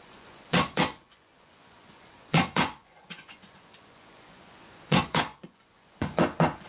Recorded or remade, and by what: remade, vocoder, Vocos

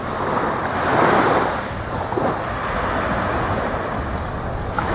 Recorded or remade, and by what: recorded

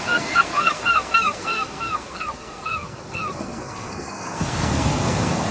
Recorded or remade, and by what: remade, codec, SNAC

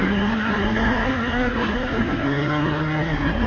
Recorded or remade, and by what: remade, codec, SNAC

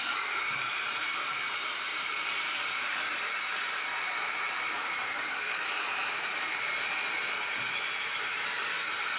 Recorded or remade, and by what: remade, vocoder, BigVGAN v2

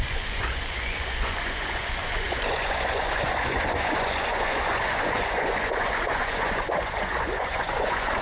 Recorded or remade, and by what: remade, vocoder, Vocos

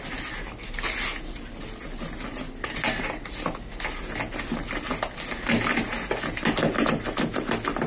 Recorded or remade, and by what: recorded